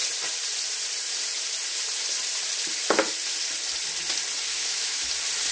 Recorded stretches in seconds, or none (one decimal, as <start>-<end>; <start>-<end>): 0.0-4.5; 5.1-5.5